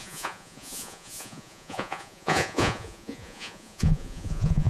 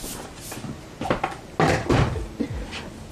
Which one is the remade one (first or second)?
first